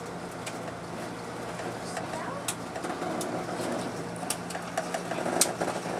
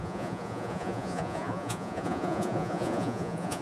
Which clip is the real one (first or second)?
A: first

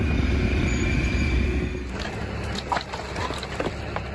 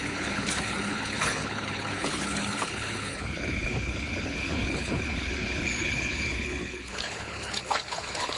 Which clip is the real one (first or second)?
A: first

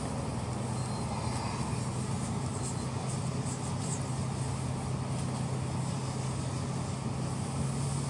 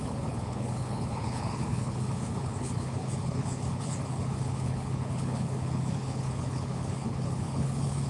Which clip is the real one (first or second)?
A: first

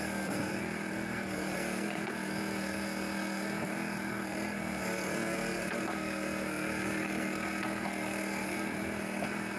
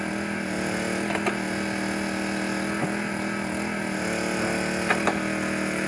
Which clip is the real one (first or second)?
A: second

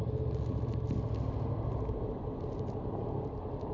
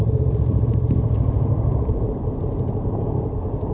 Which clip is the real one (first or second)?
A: first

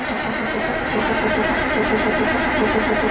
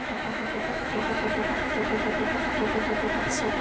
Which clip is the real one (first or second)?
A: first